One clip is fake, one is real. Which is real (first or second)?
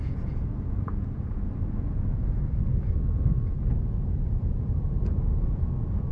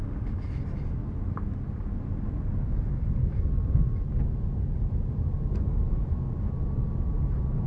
second